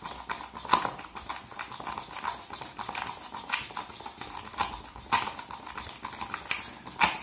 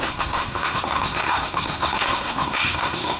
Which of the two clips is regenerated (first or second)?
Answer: second